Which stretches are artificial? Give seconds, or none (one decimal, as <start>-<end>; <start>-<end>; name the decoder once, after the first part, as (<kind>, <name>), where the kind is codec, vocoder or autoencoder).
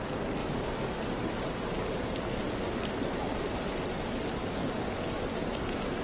none